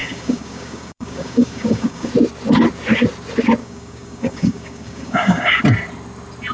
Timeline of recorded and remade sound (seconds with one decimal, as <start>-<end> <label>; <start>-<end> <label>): 0.0-2.1 remade; 2.1-3.6 recorded; 3.6-5.6 remade; 5.6-6.5 recorded